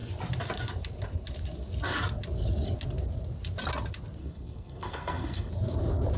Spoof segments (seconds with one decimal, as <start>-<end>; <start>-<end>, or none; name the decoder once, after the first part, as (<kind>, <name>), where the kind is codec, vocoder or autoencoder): 4.2-5.5 (codec, SNAC)